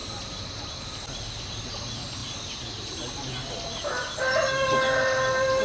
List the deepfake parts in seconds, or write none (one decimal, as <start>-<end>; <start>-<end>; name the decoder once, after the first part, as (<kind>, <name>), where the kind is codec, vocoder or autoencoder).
none